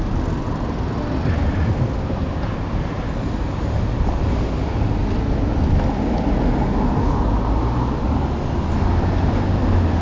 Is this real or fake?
real